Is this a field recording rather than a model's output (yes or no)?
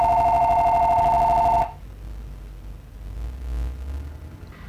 yes